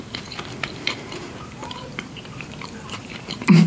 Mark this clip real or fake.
fake